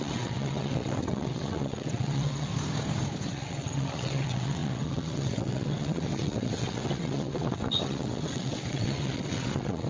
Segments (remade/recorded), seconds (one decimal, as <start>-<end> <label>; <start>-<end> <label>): 0.0-2.5 remade; 2.5-3.3 recorded; 3.3-9.9 remade